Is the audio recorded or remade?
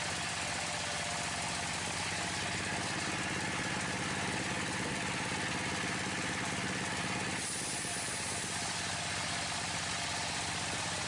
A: recorded